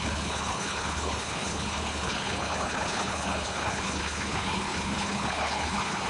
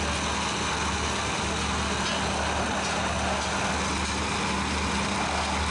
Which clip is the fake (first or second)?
first